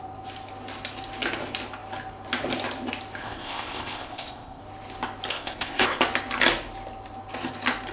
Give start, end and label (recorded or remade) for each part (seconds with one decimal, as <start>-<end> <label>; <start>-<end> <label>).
0.0-3.2 recorded; 3.2-4.6 remade; 4.6-5.3 recorded; 5.3-6.0 remade; 6.0-7.9 recorded